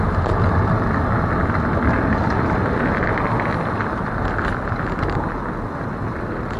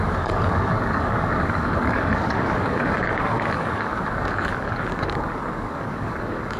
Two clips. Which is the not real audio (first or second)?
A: second